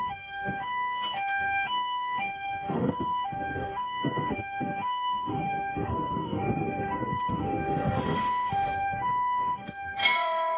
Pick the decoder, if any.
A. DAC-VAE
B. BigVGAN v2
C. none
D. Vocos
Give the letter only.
A